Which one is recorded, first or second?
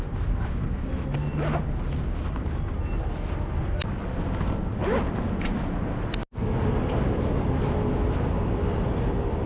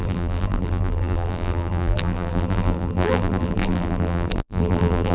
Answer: first